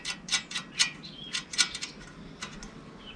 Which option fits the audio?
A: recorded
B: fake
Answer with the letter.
A